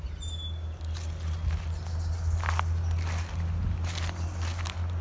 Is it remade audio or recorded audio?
recorded